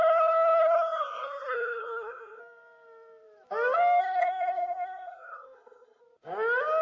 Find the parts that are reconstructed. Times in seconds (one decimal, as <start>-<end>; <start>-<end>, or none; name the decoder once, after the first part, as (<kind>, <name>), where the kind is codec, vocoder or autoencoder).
0.0-2.4 (codec, SNAC); 4.0-6.0